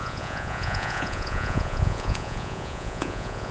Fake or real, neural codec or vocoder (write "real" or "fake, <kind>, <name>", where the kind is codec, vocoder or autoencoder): fake, vocoder, Vocos